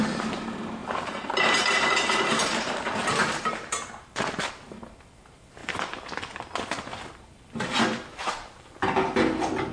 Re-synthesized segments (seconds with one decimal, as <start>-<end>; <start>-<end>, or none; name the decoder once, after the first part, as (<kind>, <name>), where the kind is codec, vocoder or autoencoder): 0.8-4.5 (vocoder, BigVGAN v2); 5.6-6.2; 8.1-8.8

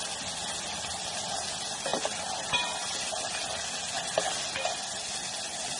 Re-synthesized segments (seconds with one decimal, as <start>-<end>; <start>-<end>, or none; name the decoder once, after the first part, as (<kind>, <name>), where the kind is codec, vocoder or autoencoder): none

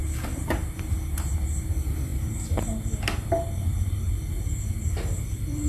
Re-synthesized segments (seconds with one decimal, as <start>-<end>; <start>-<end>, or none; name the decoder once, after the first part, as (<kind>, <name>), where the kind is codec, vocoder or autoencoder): none

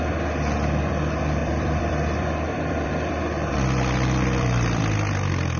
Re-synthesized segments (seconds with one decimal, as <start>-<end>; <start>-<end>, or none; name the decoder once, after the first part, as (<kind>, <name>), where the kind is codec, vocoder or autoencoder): 1.4-4.8 (vocoder, BigVGAN v2)

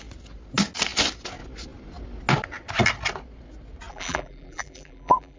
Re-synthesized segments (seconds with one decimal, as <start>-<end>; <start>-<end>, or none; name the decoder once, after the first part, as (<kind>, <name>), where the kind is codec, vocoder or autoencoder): 3.9-5.4 (vocoder, BigVGAN v2)

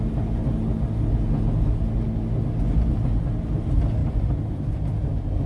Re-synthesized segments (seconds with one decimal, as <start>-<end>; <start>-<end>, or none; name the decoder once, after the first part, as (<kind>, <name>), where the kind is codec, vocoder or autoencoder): 4.0-4.7 (vocoder, BigVGAN v2)

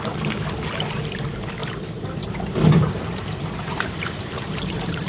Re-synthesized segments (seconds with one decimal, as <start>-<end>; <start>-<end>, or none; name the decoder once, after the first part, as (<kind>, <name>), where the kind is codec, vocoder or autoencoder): 1.6-5.1 (vocoder, BigVGAN v2)